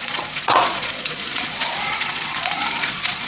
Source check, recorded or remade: remade